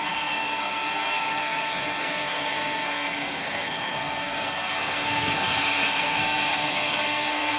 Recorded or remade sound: remade